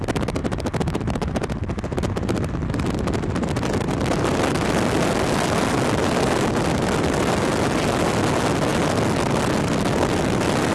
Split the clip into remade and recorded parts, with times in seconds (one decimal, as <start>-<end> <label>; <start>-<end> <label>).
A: 0.0-10.7 recorded